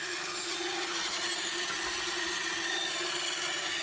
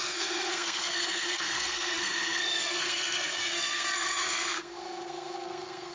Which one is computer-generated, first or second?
second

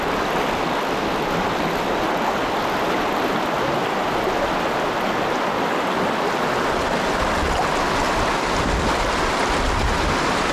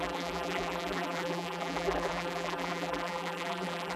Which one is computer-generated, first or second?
second